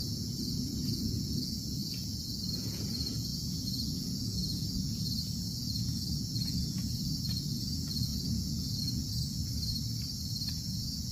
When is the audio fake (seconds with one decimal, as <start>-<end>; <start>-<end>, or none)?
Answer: 0.0-9.4; 10.5-11.1